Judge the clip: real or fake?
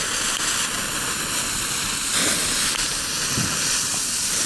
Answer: real